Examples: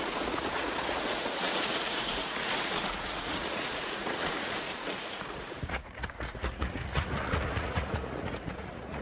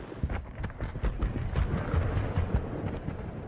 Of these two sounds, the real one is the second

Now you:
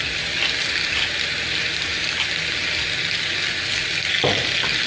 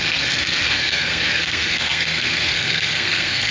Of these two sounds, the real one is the first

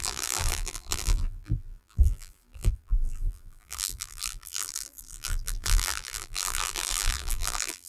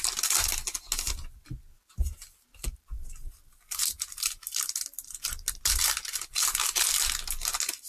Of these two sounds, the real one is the second